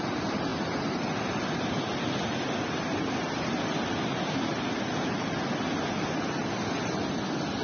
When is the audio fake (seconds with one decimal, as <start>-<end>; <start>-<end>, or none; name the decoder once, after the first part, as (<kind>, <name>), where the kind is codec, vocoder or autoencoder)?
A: none